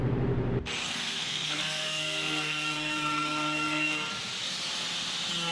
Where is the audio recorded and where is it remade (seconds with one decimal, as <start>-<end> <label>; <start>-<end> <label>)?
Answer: 0.0-0.8 recorded; 0.8-4.1 remade; 4.1-5.5 recorded